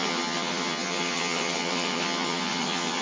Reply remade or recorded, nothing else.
remade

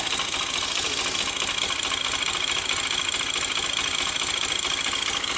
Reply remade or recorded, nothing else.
recorded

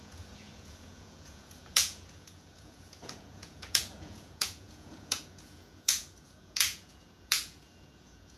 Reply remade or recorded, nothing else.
remade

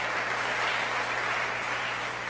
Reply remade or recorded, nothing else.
recorded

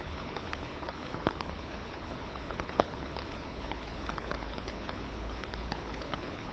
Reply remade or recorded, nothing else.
remade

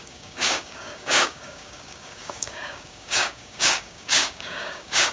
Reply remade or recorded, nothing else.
remade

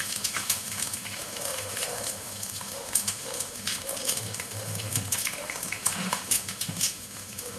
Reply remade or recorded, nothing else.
remade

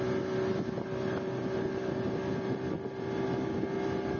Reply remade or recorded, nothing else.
recorded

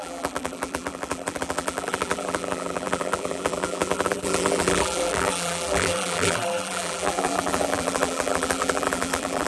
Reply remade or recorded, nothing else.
remade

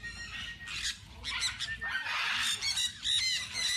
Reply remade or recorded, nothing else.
recorded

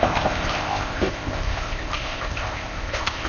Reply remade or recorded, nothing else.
remade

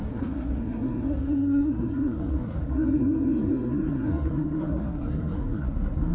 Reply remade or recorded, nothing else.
remade